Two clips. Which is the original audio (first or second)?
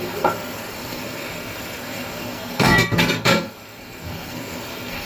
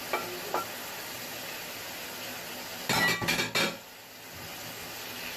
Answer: second